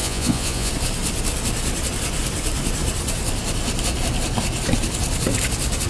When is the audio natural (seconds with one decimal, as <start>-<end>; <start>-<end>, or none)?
0.7-5.9